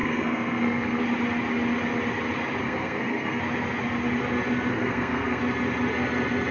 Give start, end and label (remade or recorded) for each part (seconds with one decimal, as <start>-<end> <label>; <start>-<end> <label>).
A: 0.0-1.0 remade; 1.0-2.6 recorded; 2.6-3.4 remade; 3.4-4.7 recorded; 4.7-5.4 remade; 5.4-6.5 recorded